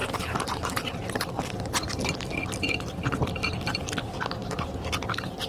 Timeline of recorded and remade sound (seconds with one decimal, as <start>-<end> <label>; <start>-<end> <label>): 0.0-3.3 remade; 3.3-4.4 recorded; 4.4-5.5 remade